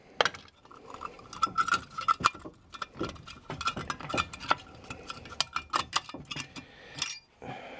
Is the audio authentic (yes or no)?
yes